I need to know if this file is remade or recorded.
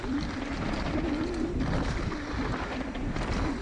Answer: remade